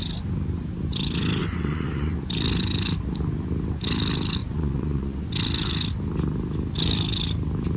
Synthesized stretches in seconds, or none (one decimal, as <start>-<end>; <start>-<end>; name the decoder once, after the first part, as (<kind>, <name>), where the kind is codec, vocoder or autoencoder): 1.4-2.3 (vocoder, Vocos); 4.4-5.3